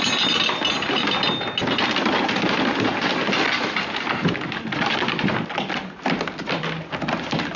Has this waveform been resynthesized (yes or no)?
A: no